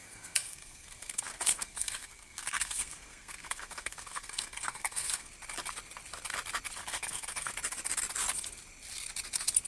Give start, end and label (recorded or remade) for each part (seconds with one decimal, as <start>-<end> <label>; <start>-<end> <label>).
0.0-5.3 remade; 5.3-6.8 recorded; 6.8-7.5 remade; 7.5-9.7 recorded